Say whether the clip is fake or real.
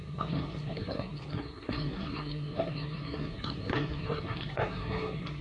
fake